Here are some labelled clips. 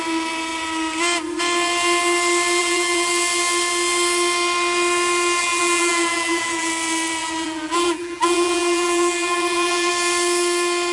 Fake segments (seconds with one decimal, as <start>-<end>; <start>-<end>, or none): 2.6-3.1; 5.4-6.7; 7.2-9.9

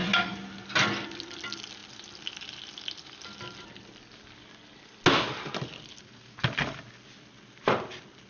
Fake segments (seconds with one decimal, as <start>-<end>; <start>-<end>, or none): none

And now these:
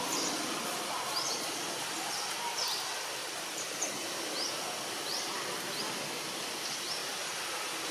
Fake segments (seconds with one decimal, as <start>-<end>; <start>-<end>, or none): 3.2-3.9; 7.0-7.9

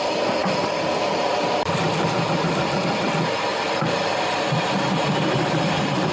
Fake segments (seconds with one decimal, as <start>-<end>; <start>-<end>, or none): 0.4-2.8; 3.5-4.4

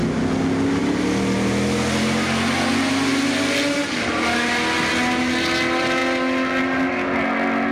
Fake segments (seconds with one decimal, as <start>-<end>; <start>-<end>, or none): none

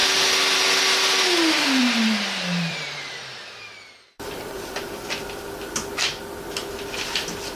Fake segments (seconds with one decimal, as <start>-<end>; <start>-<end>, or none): 1.8-5.1

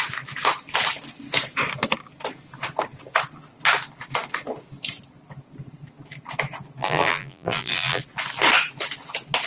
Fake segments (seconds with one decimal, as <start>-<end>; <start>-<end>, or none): 6.8-8.0

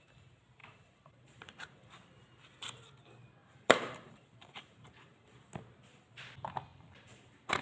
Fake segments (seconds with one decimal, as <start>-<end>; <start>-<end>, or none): 0.6-1.9; 3.4-5.4; 6.7-7.6